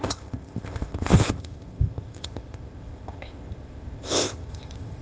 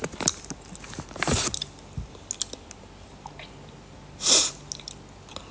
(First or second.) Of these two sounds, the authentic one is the second